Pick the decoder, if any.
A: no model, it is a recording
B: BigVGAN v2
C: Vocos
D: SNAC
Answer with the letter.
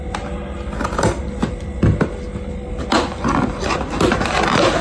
A